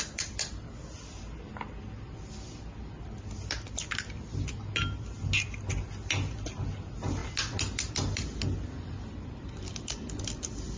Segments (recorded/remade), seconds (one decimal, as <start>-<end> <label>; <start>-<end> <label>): 0.0-10.8 recorded